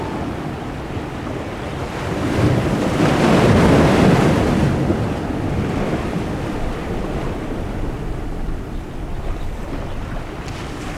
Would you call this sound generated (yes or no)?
no